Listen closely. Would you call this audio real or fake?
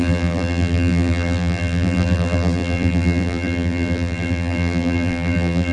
fake